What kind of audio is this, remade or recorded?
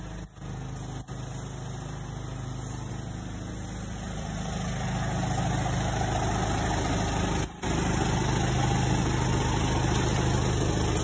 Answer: recorded